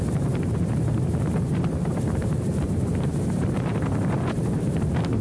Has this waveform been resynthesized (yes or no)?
yes